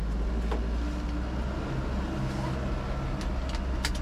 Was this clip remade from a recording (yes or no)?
no